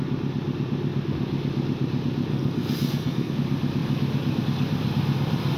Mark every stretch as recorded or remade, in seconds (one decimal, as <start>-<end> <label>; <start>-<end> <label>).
0.0-2.3 recorded; 2.3-3.3 remade; 3.3-5.6 recorded